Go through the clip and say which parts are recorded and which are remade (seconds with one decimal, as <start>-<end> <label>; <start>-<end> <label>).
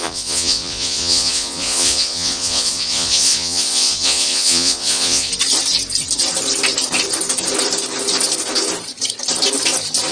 0.0-5.3 remade; 5.3-10.1 recorded